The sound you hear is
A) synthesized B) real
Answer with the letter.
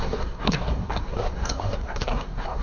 A